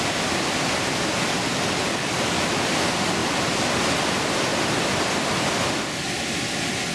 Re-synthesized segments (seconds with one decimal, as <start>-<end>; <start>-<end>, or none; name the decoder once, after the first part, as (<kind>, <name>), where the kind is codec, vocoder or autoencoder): 1.9-2.4 (codec, DAC)